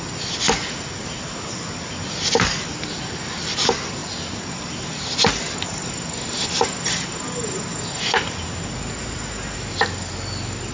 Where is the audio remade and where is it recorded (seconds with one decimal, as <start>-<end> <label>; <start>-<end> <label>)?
0.0-10.7 recorded